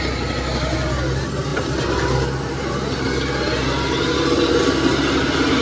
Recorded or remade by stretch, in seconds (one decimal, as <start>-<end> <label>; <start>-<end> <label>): 0.0-5.6 recorded